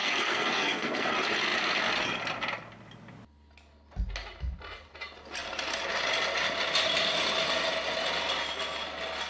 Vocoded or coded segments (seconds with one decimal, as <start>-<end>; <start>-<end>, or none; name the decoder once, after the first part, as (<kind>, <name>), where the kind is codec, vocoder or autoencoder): 0.0-1.1 (codec, SNAC)